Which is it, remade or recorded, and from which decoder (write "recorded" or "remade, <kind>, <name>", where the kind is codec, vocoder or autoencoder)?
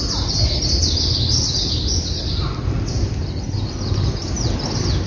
recorded